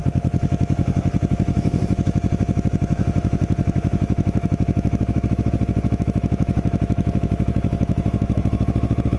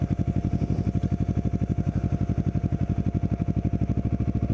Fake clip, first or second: first